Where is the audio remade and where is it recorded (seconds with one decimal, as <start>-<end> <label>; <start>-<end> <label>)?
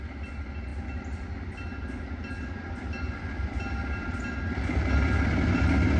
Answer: 0.0-6.0 recorded